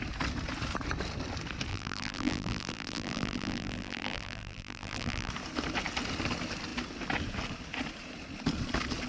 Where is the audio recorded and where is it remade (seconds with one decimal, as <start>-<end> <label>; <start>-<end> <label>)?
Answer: 0.0-1.7 recorded; 1.7-5.3 remade; 5.3-9.1 recorded